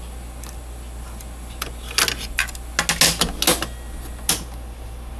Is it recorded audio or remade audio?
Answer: recorded